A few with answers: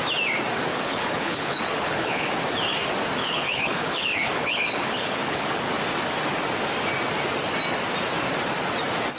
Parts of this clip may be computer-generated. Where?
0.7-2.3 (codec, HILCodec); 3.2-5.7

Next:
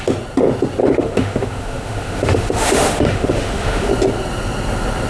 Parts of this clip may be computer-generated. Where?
0.8-3.9 (autoencoder, DAC-VAE)